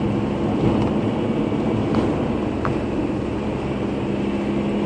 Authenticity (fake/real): real